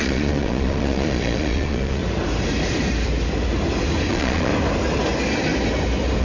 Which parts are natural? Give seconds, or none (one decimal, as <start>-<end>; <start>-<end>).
2.0-4.1; 4.5-6.2